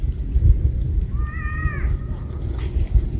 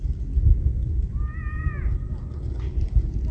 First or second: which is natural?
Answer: second